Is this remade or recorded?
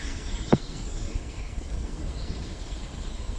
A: remade